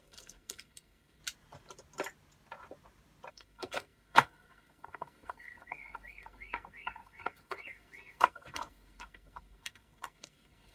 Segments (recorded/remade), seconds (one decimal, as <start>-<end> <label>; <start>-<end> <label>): 0.0-1.2 remade; 1.2-3.3 recorded; 3.3-10.7 remade